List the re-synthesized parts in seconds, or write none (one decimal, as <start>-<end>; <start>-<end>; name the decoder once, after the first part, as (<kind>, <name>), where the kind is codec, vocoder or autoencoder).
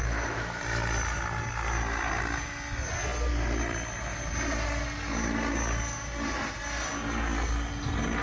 0.0-0.6 (autoencoder, DAC-VAE)